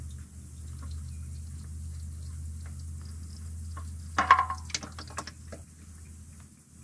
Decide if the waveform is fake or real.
real